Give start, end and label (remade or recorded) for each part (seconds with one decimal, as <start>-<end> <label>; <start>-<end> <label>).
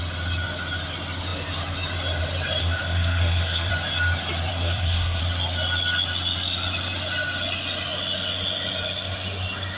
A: 0.0-2.6 recorded; 2.6-3.7 remade; 3.7-4.5 recorded; 4.5-5.2 remade; 5.2-9.8 recorded